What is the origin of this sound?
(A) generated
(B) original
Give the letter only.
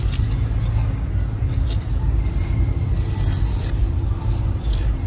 B